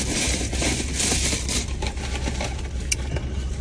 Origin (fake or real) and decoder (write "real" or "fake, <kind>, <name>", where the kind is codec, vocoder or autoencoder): real